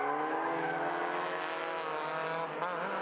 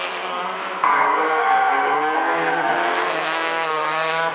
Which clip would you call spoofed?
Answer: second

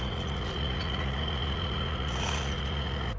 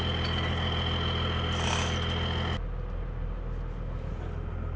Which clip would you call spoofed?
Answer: first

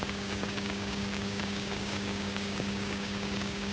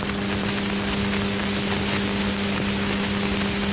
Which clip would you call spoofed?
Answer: first